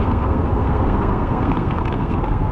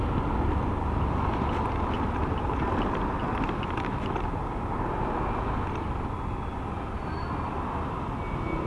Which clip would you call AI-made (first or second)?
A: first